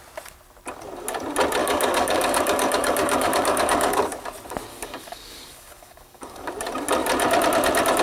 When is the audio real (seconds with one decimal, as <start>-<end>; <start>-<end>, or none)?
0.0-1.6; 4.0-4.7; 6.5-8.0